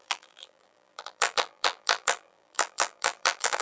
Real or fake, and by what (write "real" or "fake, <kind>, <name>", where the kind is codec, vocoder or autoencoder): fake, vocoder, BigVGAN v2